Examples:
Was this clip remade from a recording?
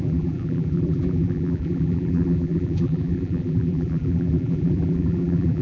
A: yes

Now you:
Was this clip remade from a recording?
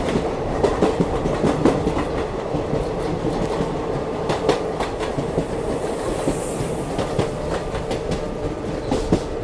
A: no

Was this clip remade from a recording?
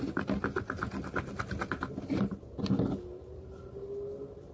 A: no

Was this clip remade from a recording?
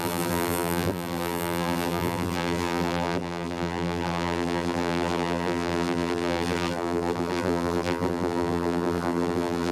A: yes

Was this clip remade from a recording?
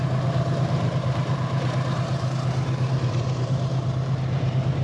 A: yes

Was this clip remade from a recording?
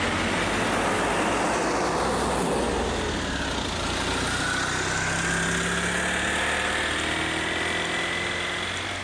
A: no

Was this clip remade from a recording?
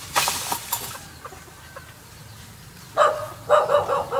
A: no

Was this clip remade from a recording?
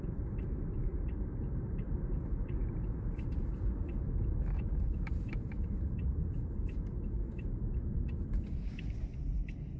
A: yes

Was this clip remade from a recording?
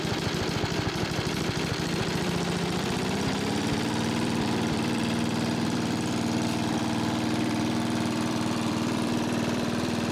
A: yes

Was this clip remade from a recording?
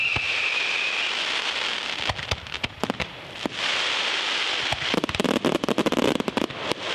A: yes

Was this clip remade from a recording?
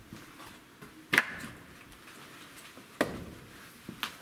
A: no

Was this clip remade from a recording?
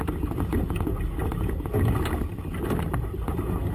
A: no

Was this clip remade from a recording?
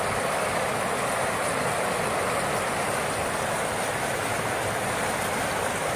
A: no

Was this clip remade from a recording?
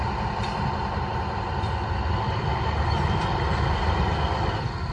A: no